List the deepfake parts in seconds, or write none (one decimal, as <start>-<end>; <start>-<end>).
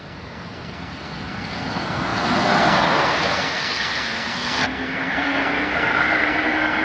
0.0-6.8